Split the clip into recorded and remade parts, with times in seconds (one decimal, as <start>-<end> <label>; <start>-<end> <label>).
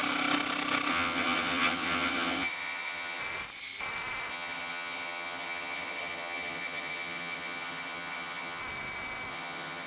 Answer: 0.0-0.9 recorded; 0.9-3.2 remade; 3.2-4.3 recorded; 4.3-8.6 remade; 8.6-9.3 recorded; 9.3-9.9 remade